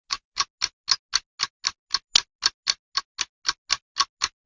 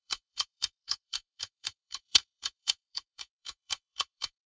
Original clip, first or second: first